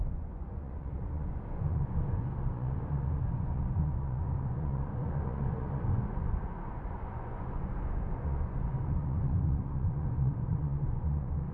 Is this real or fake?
fake